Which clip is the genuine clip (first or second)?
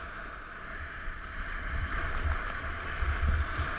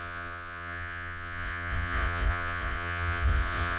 first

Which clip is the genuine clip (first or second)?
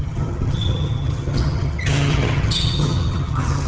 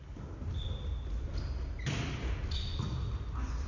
second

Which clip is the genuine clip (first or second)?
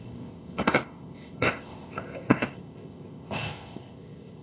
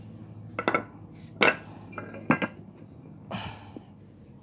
second